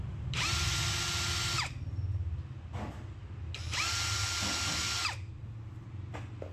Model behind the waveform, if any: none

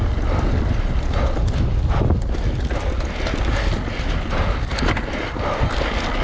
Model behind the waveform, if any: none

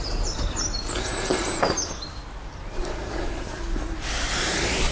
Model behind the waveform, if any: none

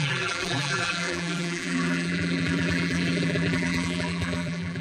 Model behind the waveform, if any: vocoder, BigVGAN v2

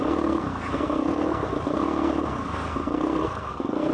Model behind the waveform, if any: codec, SNAC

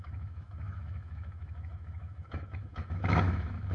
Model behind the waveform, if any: autoencoder, DAC-VAE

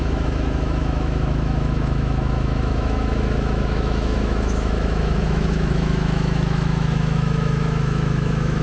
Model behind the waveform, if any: autoencoder, DAC-VAE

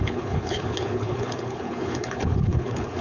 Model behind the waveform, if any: codec, HILCodec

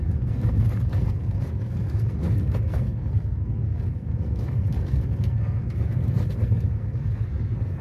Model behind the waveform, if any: codec, SNAC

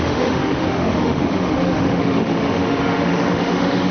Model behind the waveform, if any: autoencoder, DAC-VAE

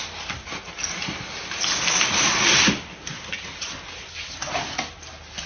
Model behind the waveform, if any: none